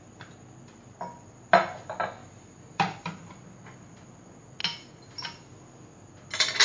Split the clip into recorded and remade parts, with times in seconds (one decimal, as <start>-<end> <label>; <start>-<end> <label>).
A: 0.0-2.2 recorded; 2.2-3.4 remade; 3.4-6.6 recorded